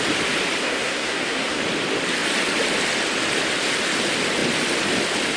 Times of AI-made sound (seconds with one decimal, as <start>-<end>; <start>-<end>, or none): 0.6-1.6